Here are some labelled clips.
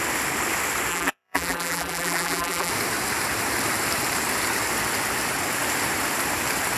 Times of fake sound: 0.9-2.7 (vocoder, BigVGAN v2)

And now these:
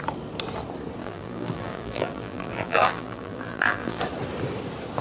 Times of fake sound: 1.0-4.0 (vocoder, BigVGAN v2)